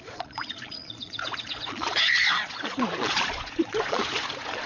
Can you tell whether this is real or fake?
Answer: fake